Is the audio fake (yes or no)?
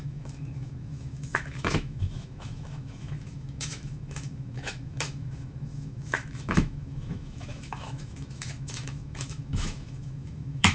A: yes